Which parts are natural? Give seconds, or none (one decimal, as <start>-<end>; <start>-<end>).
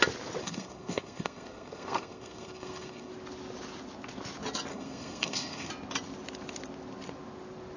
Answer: 0.0-0.4; 3.1-4.7; 5.7-7.8